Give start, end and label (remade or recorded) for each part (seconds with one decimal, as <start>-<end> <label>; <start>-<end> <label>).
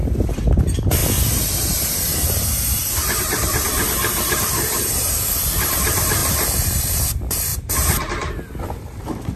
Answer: 0.0-0.6 recorded; 0.6-9.4 remade